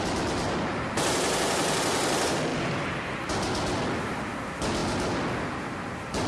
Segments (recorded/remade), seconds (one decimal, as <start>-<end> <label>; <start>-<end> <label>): 0.0-6.3 recorded